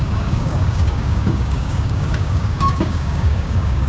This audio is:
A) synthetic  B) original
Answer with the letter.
A